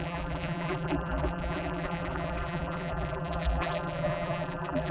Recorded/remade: remade